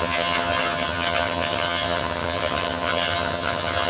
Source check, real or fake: fake